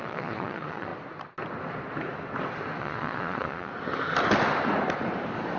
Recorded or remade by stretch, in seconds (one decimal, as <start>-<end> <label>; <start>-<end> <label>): 0.0-0.9 remade; 0.9-2.8 recorded; 2.8-3.7 remade; 3.7-5.6 recorded